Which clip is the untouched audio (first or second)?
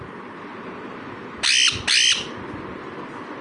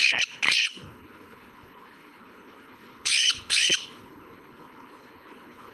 first